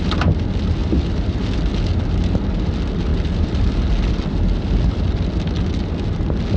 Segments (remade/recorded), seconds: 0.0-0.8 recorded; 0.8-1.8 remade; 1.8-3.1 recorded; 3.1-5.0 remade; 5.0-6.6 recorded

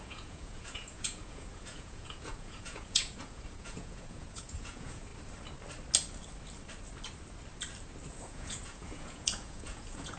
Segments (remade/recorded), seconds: 0.0-5.1 remade; 5.1-8.1 recorded; 8.1-10.2 remade

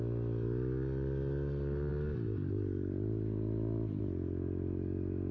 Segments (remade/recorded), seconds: 0.0-5.3 recorded